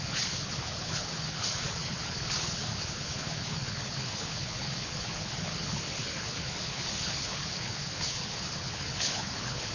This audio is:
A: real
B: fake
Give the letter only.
B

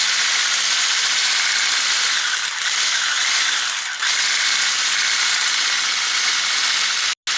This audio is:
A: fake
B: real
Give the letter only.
B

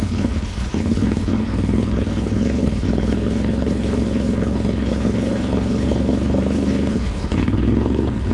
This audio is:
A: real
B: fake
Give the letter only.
B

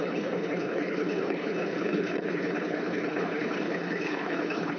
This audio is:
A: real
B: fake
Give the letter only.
B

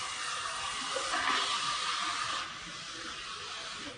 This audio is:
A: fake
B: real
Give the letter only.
B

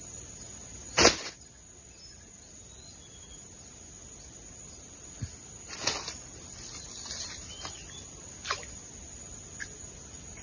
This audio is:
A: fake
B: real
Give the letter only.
B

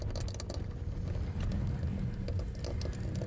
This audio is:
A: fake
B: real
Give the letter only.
B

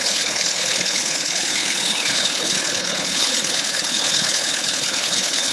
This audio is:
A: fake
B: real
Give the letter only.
A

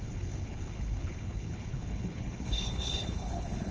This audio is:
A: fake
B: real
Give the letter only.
A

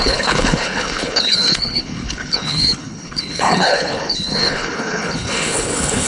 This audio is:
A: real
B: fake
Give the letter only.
B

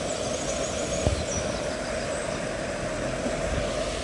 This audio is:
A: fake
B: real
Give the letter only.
B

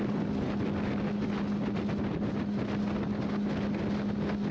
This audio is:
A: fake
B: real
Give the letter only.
B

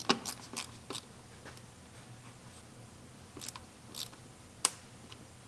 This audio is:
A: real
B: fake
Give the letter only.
A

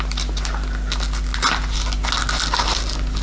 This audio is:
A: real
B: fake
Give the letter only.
A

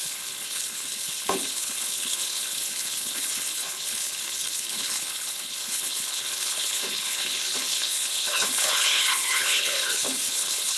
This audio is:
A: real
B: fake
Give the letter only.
B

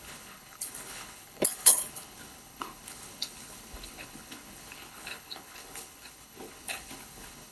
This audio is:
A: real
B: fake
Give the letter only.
B